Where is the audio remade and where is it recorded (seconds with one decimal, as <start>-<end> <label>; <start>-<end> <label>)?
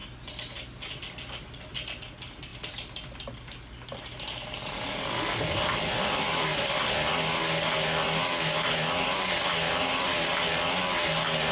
0.0-11.5 recorded